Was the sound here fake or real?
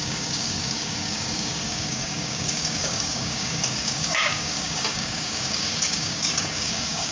fake